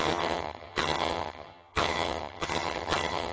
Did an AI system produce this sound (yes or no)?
yes